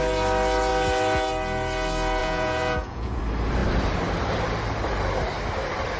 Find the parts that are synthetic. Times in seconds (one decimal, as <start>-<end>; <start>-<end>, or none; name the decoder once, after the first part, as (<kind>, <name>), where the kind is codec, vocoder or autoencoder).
2.2-3.2 (vocoder, Vocos)